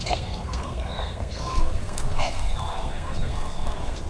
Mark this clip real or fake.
fake